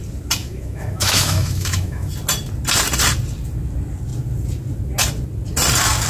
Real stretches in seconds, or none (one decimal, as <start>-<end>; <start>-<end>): 0.0-0.4; 2.1-6.1